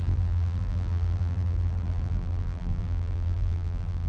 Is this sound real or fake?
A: fake